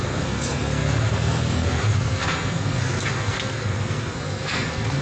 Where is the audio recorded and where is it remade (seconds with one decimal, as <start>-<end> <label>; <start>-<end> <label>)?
0.0-5.0 remade

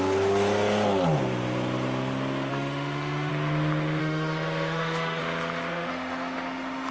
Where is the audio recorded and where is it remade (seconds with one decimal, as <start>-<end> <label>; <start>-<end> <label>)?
0.0-2.5 recorded; 2.5-3.3 remade; 3.3-4.0 recorded; 4.0-5.2 remade; 5.2-5.7 recorded; 5.7-6.9 remade

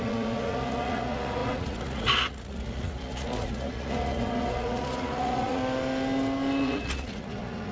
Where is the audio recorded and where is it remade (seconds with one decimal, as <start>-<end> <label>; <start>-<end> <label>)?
0.0-5.6 remade; 5.6-6.6 recorded; 6.6-7.7 remade

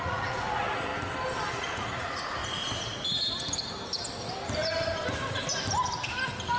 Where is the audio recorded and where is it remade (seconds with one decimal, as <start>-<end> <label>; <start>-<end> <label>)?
0.0-0.9 remade; 0.9-1.5 recorded; 1.5-2.4 remade; 2.4-6.6 recorded

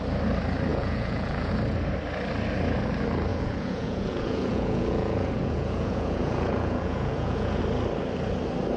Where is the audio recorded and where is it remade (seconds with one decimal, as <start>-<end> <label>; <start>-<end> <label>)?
0.0-0.7 recorded; 0.7-1.5 remade; 1.5-3.3 recorded; 3.3-7.6 remade; 7.6-8.8 recorded

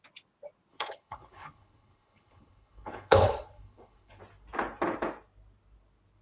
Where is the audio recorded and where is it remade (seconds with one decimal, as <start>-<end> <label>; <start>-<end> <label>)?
0.0-0.7 recorded; 0.7-4.2 remade; 4.2-6.2 recorded